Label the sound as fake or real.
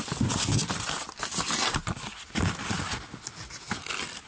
real